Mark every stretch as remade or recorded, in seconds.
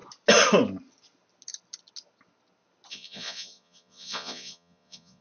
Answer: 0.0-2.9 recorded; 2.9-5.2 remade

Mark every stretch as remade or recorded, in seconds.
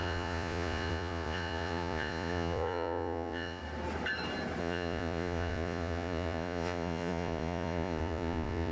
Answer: 0.0-3.6 remade; 3.6-4.6 recorded; 4.6-8.7 remade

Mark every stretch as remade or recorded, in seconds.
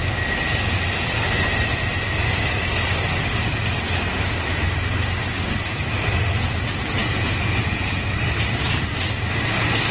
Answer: 0.0-7.0 recorded; 7.0-8.1 remade; 8.1-9.9 recorded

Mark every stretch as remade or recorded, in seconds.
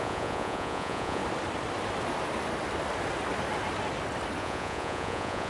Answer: 0.0-1.2 remade; 1.2-4.4 recorded; 4.4-5.5 remade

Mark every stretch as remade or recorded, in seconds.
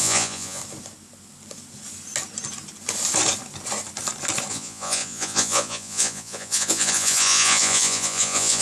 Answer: 0.0-0.6 remade; 0.6-4.5 recorded; 4.5-8.6 remade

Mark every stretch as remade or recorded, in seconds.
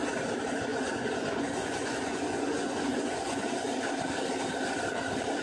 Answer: 0.0-0.7 recorded; 0.7-3.9 remade; 3.9-5.4 recorded